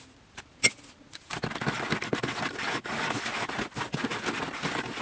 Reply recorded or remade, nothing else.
recorded